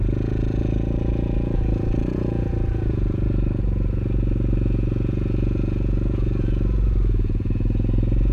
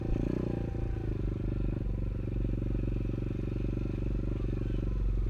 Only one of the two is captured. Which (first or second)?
second